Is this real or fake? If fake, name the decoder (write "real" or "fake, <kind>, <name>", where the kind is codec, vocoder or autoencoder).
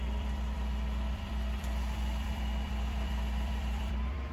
fake, vocoder, BigVGAN v2